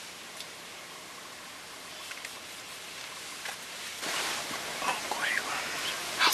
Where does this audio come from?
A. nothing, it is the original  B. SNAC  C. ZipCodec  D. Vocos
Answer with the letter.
A